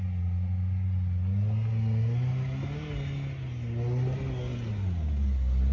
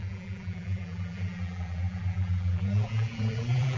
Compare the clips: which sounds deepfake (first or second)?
second